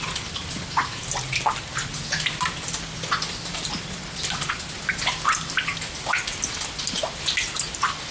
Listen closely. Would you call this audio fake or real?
real